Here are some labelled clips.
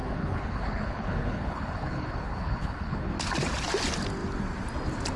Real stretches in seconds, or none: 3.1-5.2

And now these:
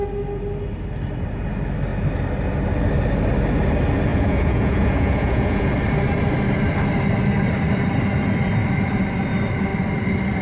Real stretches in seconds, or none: 0.0-4.1; 5.7-10.4

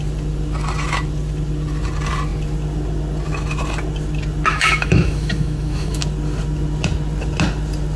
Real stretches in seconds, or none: 0.0-4.5; 6.0-8.0

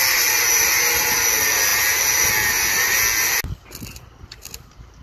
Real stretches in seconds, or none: 0.0-5.0

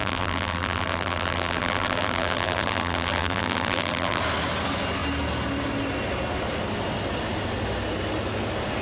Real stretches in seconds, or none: 4.2-8.8